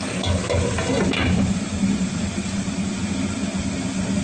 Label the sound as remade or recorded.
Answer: recorded